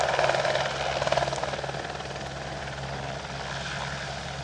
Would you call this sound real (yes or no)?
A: yes